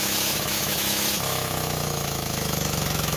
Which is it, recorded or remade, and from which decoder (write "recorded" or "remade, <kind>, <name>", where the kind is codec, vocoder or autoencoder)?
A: remade, autoencoder, DAC-VAE